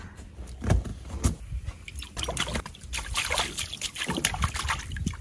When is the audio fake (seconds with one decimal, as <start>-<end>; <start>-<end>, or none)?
none

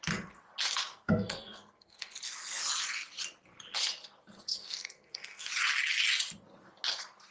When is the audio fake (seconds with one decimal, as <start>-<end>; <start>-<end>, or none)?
0.9-2.2; 4.5-5.5

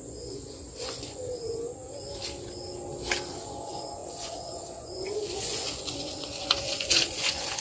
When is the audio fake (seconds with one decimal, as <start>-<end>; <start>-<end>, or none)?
0.0-1.8; 3.3-7.6

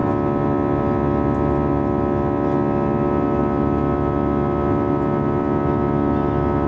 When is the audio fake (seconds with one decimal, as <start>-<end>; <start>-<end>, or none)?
none

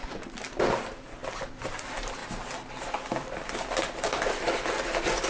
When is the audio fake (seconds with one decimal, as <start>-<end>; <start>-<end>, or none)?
0.0-1.2; 1.7-2.2; 2.8-5.3

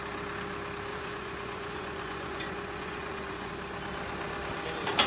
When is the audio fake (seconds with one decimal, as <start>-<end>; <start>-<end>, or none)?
0.9-3.5

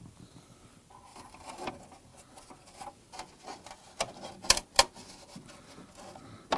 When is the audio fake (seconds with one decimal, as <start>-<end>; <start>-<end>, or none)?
1.1-1.7